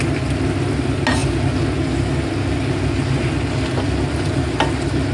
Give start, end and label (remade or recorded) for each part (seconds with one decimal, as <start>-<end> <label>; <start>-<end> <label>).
0.0-5.1 recorded